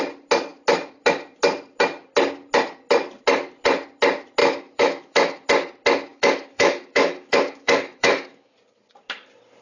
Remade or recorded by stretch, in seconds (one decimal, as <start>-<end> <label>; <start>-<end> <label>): 0.0-4.4 recorded; 4.4-5.5 remade; 5.5-6.1 recorded; 6.1-8.5 remade; 8.5-9.6 recorded